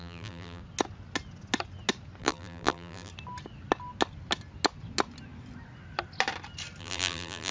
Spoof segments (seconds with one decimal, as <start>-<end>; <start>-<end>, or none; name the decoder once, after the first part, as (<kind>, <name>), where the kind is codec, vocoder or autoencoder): 0.0-0.6 (vocoder, BigVGAN v2); 2.2-3.1; 6.8-7.5